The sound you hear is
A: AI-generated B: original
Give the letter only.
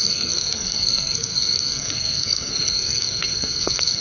A